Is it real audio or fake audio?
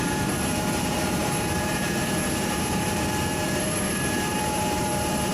fake